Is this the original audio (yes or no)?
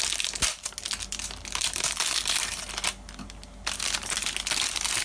yes